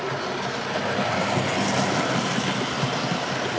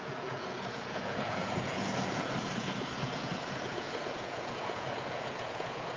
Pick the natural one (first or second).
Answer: first